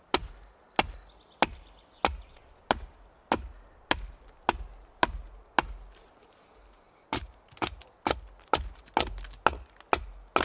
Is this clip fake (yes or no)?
no